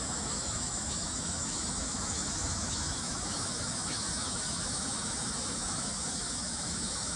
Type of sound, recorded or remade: remade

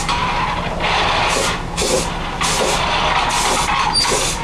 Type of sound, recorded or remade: recorded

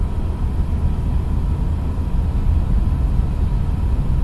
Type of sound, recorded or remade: recorded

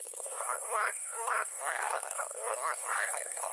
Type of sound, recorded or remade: remade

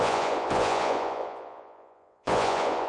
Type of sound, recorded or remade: remade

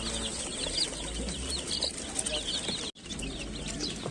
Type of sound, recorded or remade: recorded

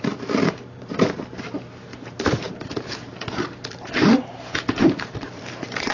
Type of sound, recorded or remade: remade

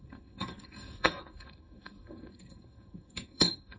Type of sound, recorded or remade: remade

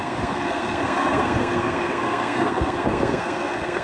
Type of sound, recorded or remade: remade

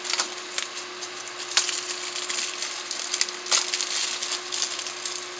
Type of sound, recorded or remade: recorded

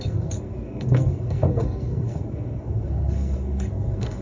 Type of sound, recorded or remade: remade